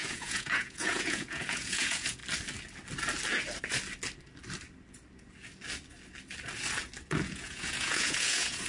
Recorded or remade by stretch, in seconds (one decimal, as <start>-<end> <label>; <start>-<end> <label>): 0.0-2.2 remade; 2.2-7.2 recorded; 7.2-8.7 remade